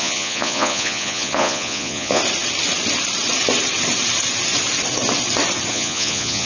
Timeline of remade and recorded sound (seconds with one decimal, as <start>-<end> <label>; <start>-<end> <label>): 0.0-2.2 remade; 2.2-5.7 recorded; 5.7-6.5 remade